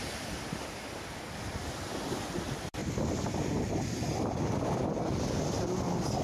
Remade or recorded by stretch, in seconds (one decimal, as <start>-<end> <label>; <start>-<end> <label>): 0.0-6.2 recorded